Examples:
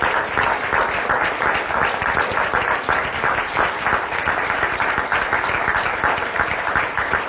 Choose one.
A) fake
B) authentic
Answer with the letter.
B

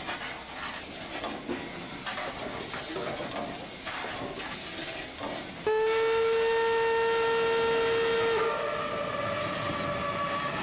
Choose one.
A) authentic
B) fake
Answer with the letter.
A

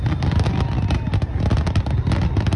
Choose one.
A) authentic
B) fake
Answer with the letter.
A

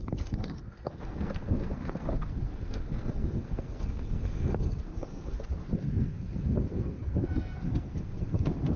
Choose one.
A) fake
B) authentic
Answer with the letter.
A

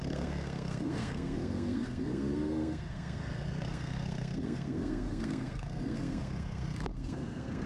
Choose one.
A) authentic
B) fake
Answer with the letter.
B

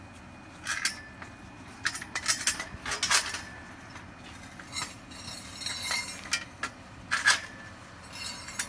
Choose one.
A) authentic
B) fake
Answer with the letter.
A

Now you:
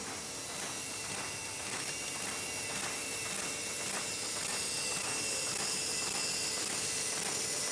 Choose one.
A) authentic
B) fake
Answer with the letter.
A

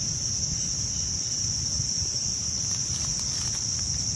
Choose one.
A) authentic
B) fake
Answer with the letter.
A